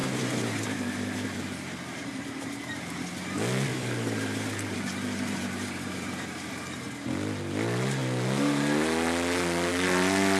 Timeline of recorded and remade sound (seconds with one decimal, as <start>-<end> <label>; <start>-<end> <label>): 0.0-2.5 remade; 2.5-3.7 recorded; 3.7-6.8 remade; 6.8-10.4 recorded